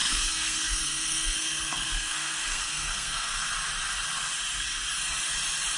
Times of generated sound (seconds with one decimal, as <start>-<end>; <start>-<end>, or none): 0.0-3.5